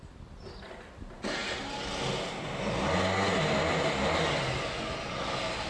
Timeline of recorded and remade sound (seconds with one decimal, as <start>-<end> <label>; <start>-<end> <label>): 0.0-5.7 recorded